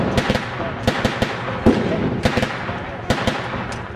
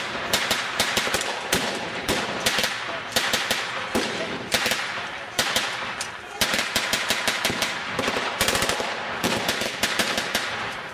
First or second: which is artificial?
second